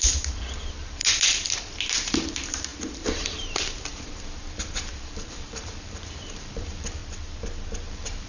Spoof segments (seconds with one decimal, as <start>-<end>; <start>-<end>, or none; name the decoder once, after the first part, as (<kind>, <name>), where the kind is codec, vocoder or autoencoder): 0.0-1.0 (vocoder, BigVGAN v2); 1.9-7.0; 7.9-8.3